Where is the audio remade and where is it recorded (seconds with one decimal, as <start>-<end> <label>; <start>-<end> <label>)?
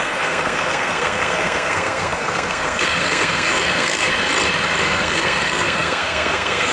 0.0-4.1 remade; 4.1-4.8 recorded; 4.8-6.7 remade